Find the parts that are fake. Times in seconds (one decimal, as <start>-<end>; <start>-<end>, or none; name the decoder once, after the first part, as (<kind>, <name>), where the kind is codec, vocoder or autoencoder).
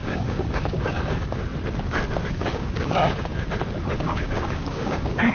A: 0.0-1.5 (codec, DAC); 2.3-3.3; 4.0-5.3